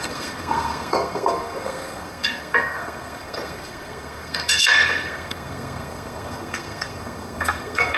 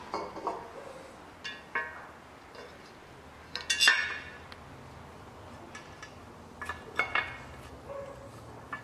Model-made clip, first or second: first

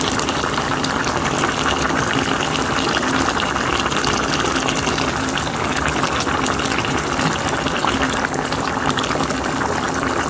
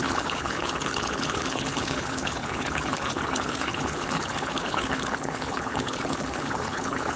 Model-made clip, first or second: second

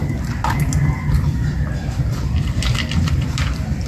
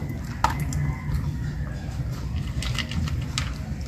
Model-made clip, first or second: first